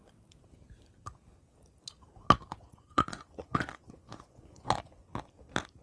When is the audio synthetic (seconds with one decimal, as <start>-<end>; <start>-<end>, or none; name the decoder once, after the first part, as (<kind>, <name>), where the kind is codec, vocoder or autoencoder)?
2.5-5.3 (vocoder, Vocos)